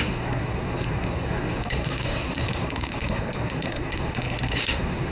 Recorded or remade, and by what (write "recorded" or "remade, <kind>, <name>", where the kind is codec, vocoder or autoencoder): remade, codec, SNAC